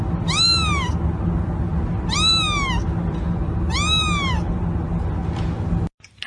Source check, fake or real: real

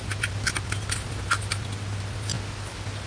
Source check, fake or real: real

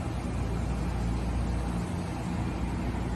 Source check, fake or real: real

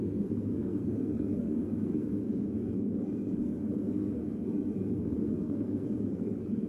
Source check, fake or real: fake